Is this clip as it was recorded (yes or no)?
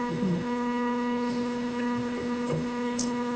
no